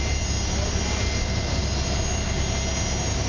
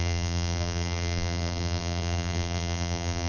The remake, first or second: second